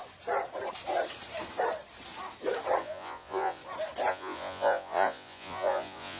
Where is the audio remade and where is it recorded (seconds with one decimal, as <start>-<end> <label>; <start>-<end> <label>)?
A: 0.0-2.8 recorded; 2.8-3.6 remade; 3.6-4.1 recorded; 4.1-6.2 remade